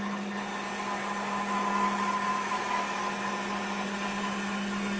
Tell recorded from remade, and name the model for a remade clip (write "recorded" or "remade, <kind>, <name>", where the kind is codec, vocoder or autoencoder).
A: recorded